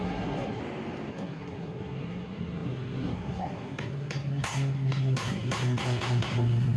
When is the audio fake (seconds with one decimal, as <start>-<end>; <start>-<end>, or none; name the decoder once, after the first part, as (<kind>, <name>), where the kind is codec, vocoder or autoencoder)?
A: 0.0-0.6 (codec, SNAC); 1.1-6.8